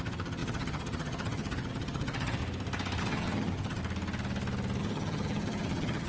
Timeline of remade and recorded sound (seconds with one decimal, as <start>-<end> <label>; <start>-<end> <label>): 0.0-2.4 remade; 2.4-3.0 recorded; 3.0-3.8 remade; 3.8-4.8 recorded; 4.8-6.1 remade